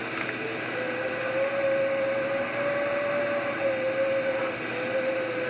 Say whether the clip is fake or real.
real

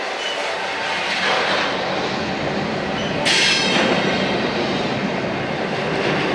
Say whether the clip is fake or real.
real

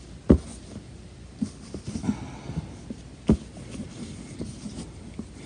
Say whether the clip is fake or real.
real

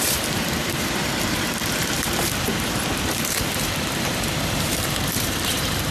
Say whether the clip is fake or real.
fake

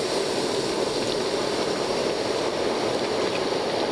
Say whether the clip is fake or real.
real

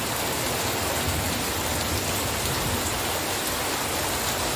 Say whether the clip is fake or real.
real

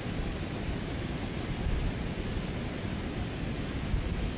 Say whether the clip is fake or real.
real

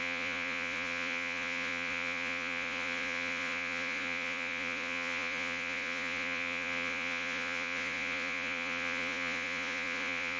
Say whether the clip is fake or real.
fake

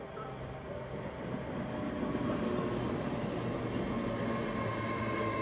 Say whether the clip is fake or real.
real